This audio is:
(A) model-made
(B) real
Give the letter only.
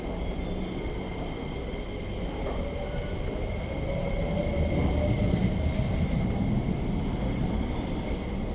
B